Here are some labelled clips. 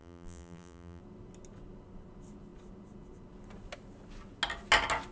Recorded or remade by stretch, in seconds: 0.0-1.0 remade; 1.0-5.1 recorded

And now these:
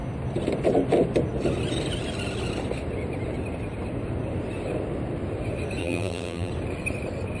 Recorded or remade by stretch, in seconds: 0.0-5.8 recorded; 5.8-6.5 remade; 6.5-7.4 recorded

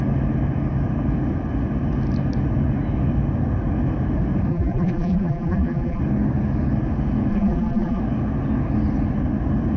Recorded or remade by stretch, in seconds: 0.0-4.5 recorded; 4.5-6.0 remade; 6.0-7.3 recorded; 7.3-8.0 remade; 8.0-9.8 recorded

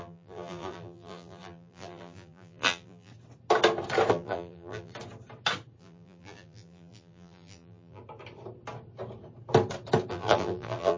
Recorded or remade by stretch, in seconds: 0.0-3.1 remade; 3.1-4.1 recorded; 4.1-4.9 remade; 4.9-5.8 recorded; 5.8-8.0 remade; 8.0-10.1 recorded; 10.1-11.0 remade